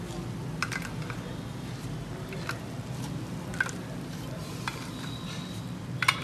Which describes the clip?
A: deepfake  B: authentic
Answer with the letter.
B